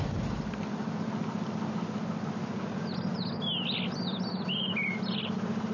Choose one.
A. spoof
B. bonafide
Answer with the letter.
B